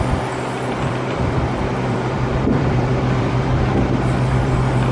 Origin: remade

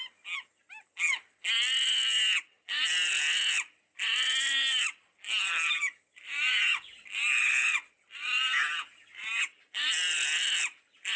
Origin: recorded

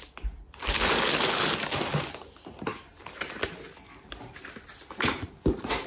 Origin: recorded